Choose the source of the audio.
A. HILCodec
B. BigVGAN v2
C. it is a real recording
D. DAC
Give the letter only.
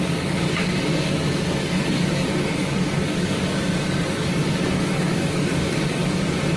D